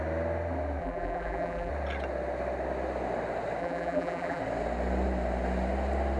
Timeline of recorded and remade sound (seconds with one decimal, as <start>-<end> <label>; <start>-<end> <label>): 0.0-0.8 recorded; 0.8-1.7 remade; 1.7-3.6 recorded; 3.6-4.4 remade; 4.4-6.2 recorded